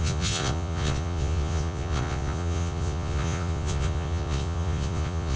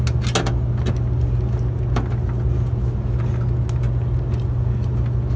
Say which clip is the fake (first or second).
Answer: first